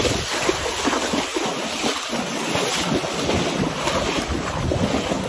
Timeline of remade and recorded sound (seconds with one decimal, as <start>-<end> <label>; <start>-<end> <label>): 0.0-5.3 recorded